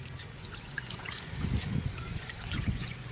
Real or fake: fake